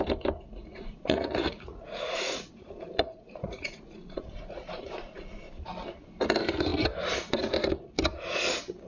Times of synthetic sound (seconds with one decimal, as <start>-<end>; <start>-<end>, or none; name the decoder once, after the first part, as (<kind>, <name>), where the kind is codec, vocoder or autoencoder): 0.6-5.6 (vocoder, Vocos)